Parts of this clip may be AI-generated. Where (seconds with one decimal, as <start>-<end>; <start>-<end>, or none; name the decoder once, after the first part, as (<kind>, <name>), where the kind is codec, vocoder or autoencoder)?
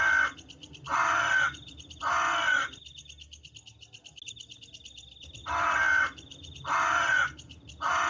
0.6-2.0 (vocoder, BigVGAN v2); 5.4-8.1